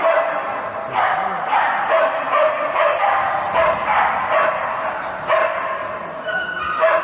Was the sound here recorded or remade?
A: recorded